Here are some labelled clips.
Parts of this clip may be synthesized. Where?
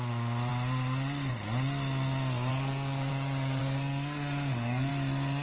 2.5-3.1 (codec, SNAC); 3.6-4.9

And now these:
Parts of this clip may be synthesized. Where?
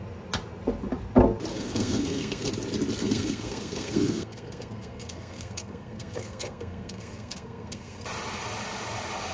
1.5-2.5 (codec, SNAC); 3.0-8.0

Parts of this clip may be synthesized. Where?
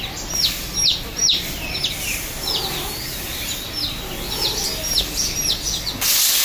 none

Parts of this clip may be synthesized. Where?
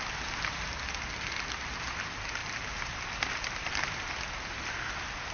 none